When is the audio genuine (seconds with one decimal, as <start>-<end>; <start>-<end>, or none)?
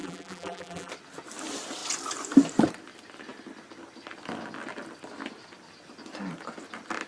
0.9-7.1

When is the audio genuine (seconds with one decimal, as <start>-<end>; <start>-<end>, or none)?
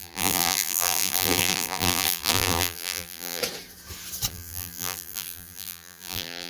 3.4-4.3